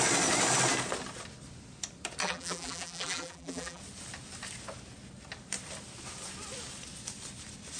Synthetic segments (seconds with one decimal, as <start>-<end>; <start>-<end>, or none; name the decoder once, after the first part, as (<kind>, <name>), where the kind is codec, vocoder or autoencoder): 2.2-3.8 (vocoder, BigVGAN v2)